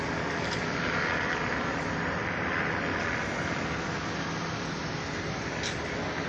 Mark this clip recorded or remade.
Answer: recorded